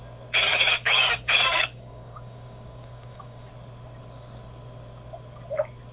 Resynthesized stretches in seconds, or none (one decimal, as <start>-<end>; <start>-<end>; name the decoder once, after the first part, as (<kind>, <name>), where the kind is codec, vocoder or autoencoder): 0.5-3.5 (codec, DAC)